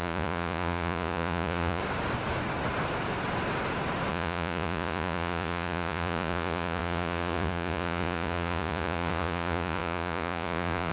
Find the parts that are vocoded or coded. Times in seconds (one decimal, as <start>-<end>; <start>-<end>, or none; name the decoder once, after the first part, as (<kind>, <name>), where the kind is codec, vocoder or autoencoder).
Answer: 0.0-1.8 (vocoder, Vocos); 4.1-10.9